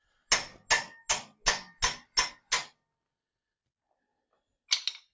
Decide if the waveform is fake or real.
real